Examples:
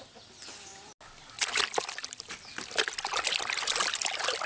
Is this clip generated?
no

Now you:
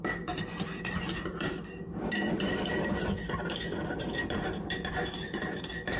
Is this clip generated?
yes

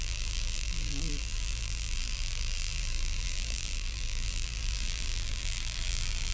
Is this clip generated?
yes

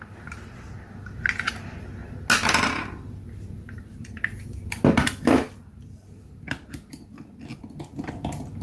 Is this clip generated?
no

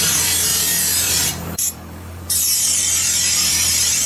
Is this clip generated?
yes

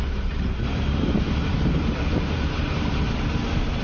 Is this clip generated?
yes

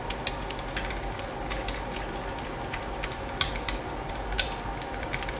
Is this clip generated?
no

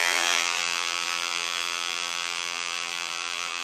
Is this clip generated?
yes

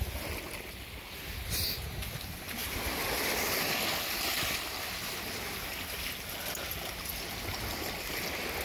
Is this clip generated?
no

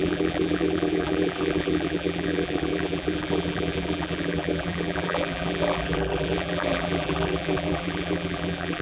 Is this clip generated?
yes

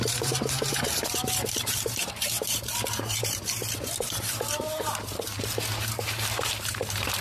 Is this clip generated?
yes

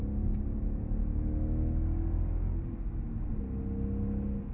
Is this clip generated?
no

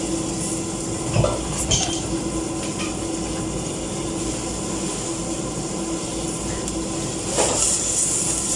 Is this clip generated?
no